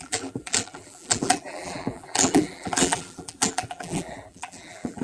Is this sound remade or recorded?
remade